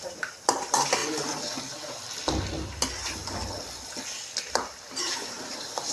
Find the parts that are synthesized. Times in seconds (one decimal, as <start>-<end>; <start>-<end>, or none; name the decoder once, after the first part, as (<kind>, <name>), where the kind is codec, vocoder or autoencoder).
0.0-1.0 (vocoder, BigVGAN v2); 4.5-5.9

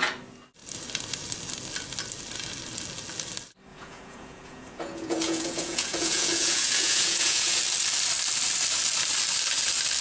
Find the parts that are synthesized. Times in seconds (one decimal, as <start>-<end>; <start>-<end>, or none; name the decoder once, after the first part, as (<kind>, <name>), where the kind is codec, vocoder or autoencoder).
3.7-7.6 (vocoder, Vocos)

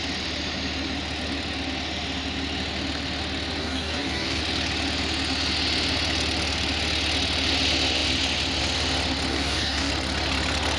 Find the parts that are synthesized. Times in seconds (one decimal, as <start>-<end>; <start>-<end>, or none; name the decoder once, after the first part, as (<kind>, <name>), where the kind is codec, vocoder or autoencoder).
3.6-4.4 (codec, DAC); 9.3-9.9

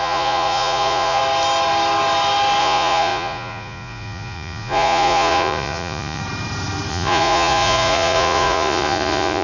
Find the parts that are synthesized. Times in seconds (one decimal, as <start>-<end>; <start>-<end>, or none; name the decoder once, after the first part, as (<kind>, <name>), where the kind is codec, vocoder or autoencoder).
0.0-1.2 (vocoder, Vocos); 2.6-6.2; 6.9-9.4

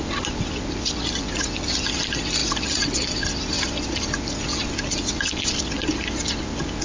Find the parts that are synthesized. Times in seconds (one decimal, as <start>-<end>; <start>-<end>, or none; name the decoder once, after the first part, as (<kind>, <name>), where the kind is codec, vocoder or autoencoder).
none

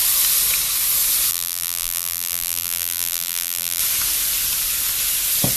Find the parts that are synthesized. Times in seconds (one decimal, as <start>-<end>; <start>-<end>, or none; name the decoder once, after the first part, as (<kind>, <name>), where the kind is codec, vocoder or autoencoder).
1.3-3.8 (vocoder, BigVGAN v2)

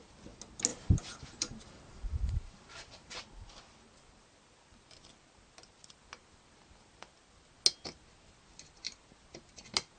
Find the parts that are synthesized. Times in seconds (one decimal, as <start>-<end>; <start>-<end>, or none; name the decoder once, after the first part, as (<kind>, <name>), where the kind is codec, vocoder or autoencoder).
0.7-3.2 (vocoder, BigVGAN v2)

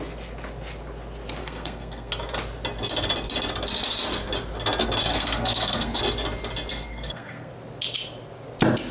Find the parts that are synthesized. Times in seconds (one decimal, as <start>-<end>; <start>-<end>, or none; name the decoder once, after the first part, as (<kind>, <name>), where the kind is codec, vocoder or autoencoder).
1.4-2.1 (codec, SNAC); 5.1-6.0; 6.7-7.5